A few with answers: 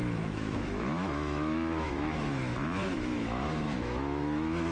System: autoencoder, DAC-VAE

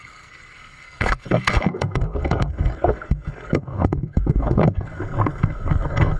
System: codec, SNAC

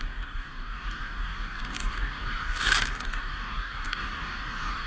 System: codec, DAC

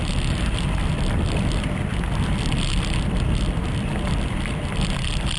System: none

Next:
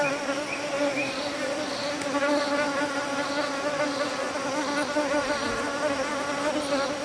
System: none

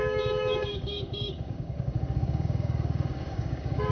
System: codec, DAC